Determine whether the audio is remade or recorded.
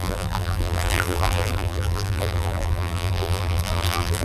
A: remade